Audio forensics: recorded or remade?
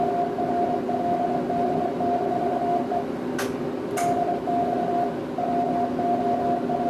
recorded